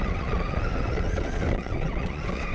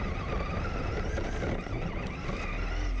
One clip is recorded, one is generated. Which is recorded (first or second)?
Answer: second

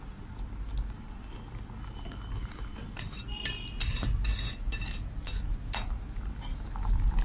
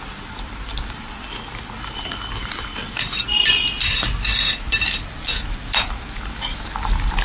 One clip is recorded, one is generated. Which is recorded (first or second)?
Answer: first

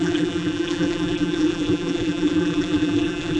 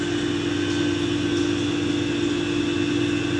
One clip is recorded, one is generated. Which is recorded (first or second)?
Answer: second